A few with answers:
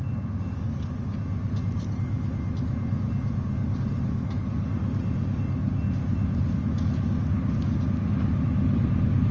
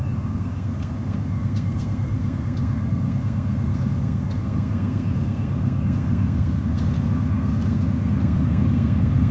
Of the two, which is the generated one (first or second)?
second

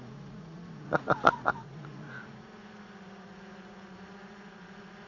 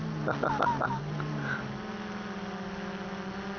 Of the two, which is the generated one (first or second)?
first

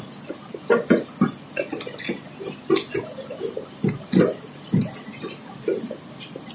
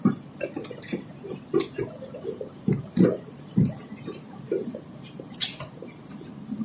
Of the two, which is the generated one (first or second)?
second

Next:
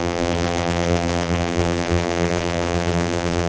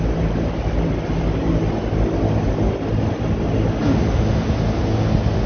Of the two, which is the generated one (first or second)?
first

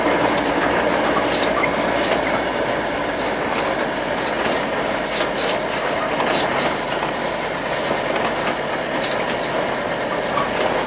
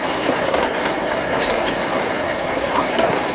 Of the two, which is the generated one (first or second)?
second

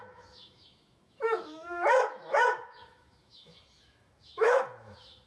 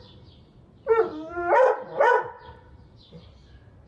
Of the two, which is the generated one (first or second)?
first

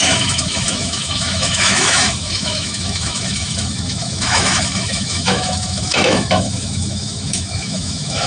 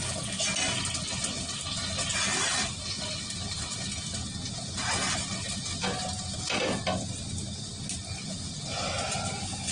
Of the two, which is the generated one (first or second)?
first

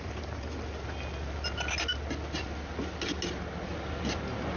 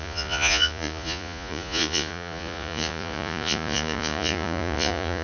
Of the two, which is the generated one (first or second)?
second